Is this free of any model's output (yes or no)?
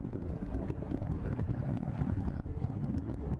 no